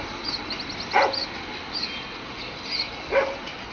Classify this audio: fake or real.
real